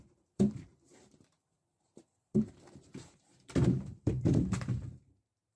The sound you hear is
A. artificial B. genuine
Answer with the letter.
A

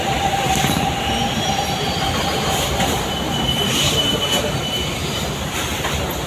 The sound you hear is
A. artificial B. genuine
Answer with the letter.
A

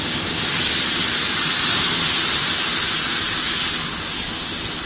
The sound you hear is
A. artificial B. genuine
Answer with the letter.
B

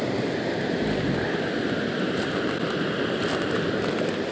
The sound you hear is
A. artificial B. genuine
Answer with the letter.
B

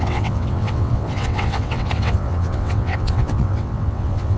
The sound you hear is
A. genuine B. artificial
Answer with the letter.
B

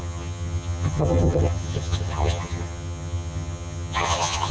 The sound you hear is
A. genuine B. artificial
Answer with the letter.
B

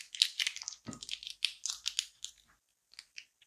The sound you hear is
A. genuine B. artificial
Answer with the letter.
B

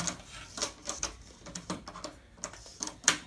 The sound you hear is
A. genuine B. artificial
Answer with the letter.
A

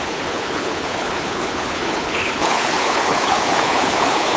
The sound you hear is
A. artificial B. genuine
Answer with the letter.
A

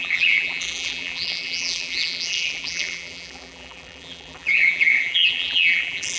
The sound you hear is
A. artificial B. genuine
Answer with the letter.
A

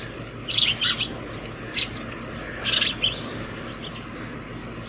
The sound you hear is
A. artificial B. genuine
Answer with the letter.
B